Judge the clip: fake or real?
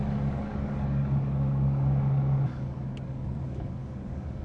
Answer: fake